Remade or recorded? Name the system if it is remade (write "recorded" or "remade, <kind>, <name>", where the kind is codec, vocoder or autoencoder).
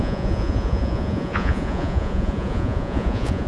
remade, vocoder, Vocos